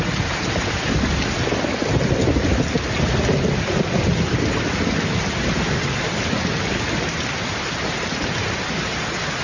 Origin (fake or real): real